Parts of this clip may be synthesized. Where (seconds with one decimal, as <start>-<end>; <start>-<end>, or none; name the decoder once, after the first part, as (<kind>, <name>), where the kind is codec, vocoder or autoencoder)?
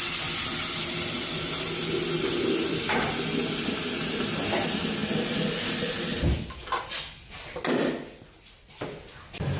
none